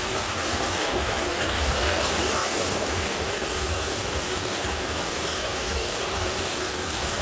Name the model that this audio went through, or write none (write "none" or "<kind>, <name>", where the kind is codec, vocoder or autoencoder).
codec, DAC